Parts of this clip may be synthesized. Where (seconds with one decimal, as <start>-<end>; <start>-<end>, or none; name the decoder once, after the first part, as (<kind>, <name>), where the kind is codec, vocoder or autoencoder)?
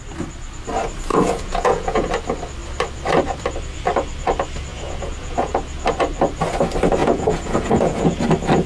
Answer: 1.1-2.1 (vocoder, Vocos); 4.7-5.6; 7.0-8.2